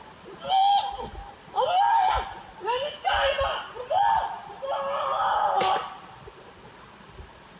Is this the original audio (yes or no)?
yes